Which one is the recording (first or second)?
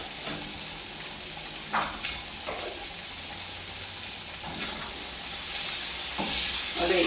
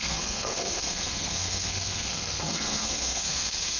first